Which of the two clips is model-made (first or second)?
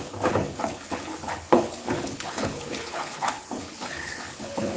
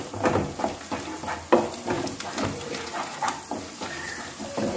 first